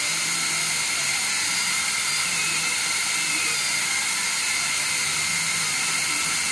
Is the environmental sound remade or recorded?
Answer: recorded